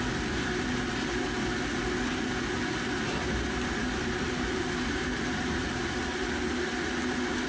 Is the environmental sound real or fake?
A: real